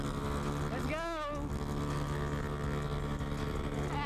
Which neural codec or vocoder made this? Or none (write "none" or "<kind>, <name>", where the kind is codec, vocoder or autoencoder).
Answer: none